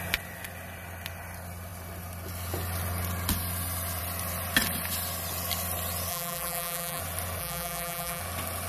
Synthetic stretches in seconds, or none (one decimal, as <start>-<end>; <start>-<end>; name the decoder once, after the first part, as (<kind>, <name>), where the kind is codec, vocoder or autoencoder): 6.1-7.0 (vocoder, BigVGAN v2); 7.4-8.2